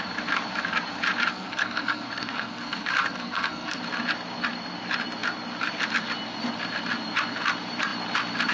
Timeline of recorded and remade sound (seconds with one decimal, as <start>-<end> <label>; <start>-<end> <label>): 0.0-1.3 recorded; 1.3-3.8 remade; 3.8-8.5 recorded